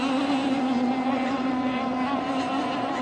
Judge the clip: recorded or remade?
recorded